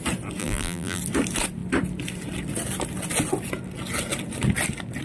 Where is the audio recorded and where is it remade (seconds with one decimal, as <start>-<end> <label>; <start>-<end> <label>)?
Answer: 0.0-0.4 recorded; 0.4-1.0 remade; 1.0-5.0 recorded

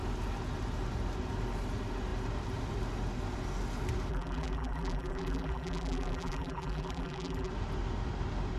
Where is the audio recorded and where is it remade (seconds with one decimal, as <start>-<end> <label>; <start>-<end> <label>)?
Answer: 0.0-4.1 recorded; 4.1-7.5 remade; 7.5-8.6 recorded

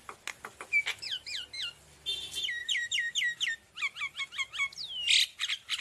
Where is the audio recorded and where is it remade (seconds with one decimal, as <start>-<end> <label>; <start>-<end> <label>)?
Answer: 0.0-2.6 recorded; 2.6-4.2 remade; 4.2-5.8 recorded

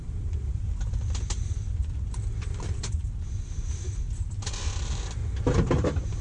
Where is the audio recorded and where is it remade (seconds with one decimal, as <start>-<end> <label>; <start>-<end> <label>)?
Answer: 0.0-0.6 remade; 0.6-2.4 recorded; 2.4-3.0 remade; 3.0-4.8 recorded; 4.8-5.2 remade; 5.2-5.7 recorded; 5.7-6.2 remade

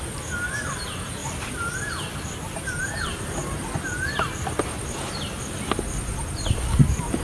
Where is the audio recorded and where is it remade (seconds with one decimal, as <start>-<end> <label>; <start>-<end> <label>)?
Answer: 0.0-1.2 recorded; 1.2-5.4 remade; 5.4-7.2 recorded

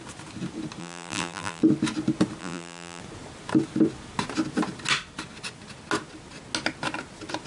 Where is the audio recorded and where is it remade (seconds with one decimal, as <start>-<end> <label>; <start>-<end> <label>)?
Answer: 0.0-0.8 recorded; 0.8-1.6 remade; 1.6-2.4 recorded; 2.4-3.0 remade; 3.0-7.5 recorded